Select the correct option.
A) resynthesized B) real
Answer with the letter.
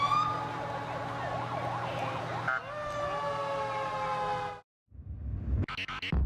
B